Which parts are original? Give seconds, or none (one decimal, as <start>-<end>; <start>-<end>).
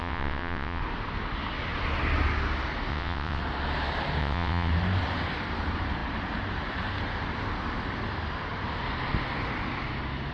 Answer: 0.8-2.9; 3.4-4.2; 4.7-10.3